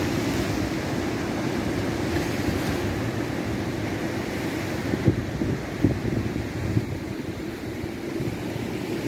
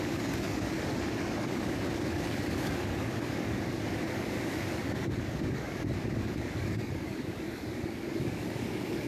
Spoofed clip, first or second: second